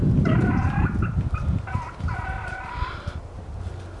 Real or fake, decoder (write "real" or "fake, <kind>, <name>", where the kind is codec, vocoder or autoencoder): real